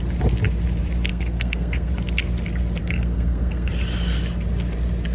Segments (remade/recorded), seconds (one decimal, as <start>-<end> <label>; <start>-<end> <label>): 0.0-1.1 recorded; 1.1-1.9 remade; 1.9-2.8 recorded; 2.8-3.7 remade; 3.7-5.1 recorded